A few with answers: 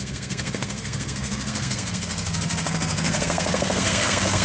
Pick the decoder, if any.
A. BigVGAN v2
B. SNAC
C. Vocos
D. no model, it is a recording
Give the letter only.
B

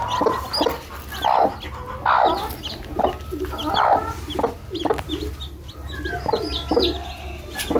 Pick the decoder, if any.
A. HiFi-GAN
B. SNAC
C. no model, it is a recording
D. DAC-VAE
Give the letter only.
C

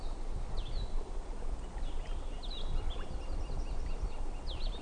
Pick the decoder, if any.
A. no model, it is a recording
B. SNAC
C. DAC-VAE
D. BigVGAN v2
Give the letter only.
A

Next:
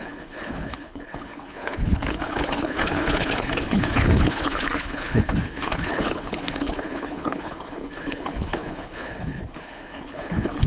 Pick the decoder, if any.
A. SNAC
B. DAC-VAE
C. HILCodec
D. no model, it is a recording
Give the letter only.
C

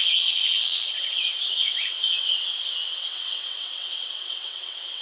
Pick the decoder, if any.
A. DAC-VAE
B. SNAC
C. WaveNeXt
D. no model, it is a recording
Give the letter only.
C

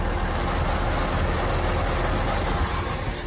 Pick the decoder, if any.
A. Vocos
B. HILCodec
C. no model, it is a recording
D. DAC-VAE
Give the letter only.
C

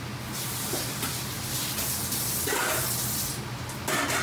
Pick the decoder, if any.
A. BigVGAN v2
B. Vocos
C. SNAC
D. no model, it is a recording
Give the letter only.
D